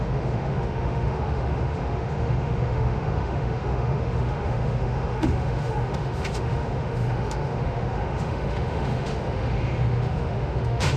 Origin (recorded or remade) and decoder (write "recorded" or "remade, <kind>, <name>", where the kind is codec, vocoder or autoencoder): remade, autoencoder, DAC-VAE